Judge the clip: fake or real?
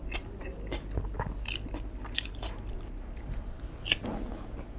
real